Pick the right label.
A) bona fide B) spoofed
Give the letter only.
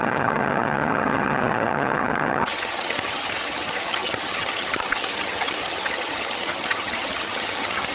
B